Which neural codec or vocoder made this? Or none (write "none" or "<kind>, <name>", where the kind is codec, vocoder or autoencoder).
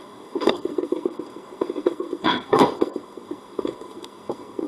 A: codec, SNAC